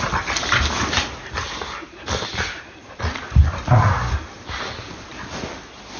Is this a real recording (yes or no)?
yes